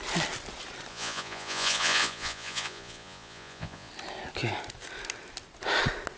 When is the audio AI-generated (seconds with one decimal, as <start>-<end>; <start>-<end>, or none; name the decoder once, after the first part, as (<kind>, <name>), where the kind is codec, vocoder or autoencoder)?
0.9-3.9 (vocoder, Vocos)